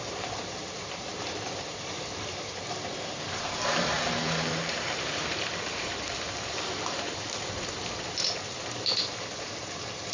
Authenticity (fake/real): fake